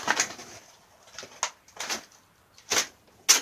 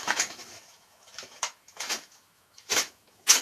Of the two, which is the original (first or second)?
first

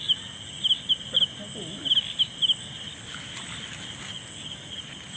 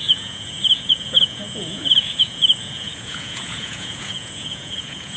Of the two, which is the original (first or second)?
first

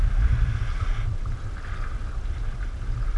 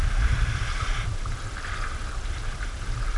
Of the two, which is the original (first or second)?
first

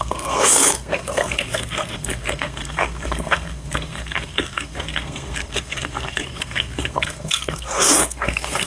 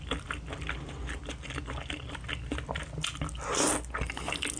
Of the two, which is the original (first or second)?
second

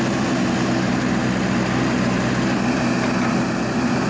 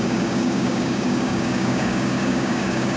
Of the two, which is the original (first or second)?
first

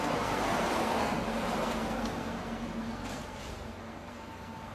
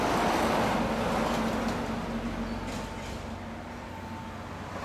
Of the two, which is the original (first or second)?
second